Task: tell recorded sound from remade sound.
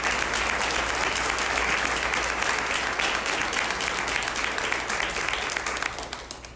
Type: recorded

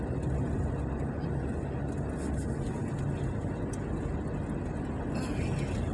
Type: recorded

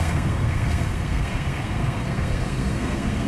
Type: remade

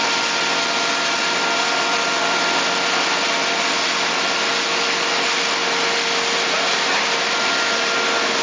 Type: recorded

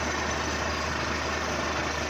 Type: recorded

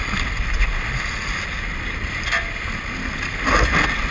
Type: recorded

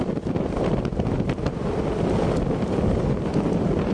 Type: recorded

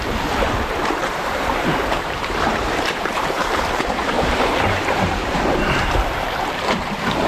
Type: remade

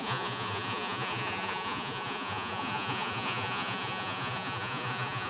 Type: remade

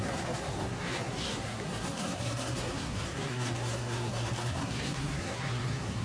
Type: remade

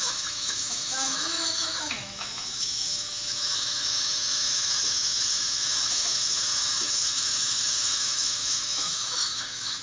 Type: remade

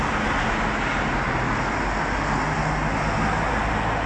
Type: recorded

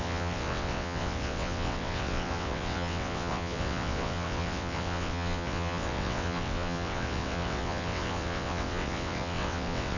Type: remade